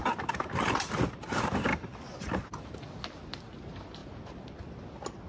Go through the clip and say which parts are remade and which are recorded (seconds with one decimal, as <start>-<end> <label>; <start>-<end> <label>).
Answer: 0.0-5.3 recorded